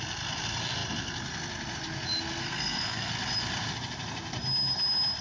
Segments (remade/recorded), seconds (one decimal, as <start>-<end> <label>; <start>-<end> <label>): 0.0-2.4 recorded; 2.4-3.1 remade; 3.1-5.2 recorded